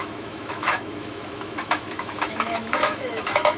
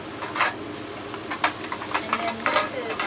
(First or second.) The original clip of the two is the second